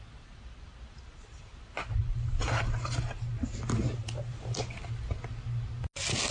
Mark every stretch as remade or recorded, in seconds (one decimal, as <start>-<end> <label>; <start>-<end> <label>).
0.0-6.3 recorded